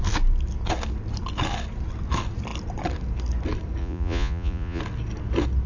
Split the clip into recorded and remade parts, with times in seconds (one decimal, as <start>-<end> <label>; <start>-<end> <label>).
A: 0.0-3.8 recorded; 3.8-4.8 remade; 4.8-5.7 recorded